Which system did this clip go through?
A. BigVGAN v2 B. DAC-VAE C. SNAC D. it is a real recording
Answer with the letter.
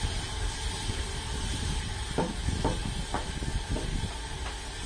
D